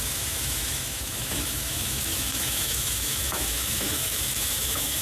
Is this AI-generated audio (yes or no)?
yes